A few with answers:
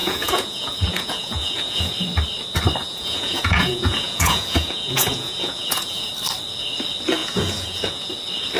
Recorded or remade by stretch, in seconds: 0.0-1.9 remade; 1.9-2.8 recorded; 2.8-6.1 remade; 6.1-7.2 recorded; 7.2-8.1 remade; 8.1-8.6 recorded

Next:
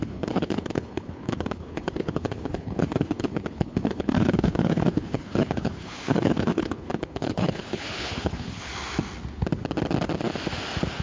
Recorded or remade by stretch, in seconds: 0.0-8.7 remade; 8.7-11.0 recorded

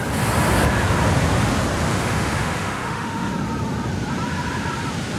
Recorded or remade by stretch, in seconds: 0.0-1.9 recorded; 1.9-3.3 remade; 3.3-5.2 recorded

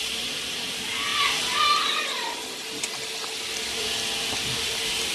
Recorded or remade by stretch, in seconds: 0.0-1.1 remade; 1.1-4.2 recorded; 4.2-5.1 remade

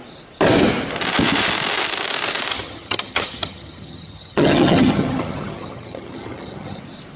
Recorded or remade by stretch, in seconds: 0.0-2.5 recorded; 2.5-6.8 remade; 6.8-7.2 recorded

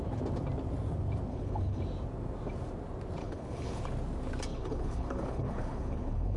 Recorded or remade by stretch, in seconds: 0.0-1.3 recorded; 1.3-1.8 remade; 1.8-3.2 recorded; 3.2-3.8 remade; 3.8-4.5 recorded; 4.5-6.4 remade

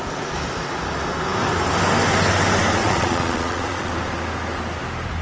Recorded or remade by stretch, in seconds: 0.0-2.8 recorded; 2.8-3.9 remade; 3.9-5.2 recorded